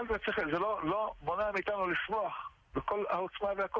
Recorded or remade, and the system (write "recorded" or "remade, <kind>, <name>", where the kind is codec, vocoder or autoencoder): recorded